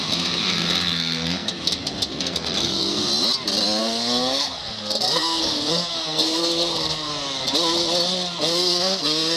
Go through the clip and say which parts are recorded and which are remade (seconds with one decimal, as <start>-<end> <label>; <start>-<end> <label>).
0.0-3.1 remade; 3.1-3.8 recorded; 3.8-7.1 remade; 7.1-8.4 recorded; 8.4-9.4 remade